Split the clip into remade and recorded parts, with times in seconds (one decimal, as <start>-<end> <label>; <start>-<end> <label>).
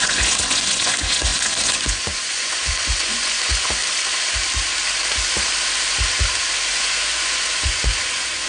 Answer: 0.0-3.8 remade; 3.8-6.7 recorded; 6.7-8.5 remade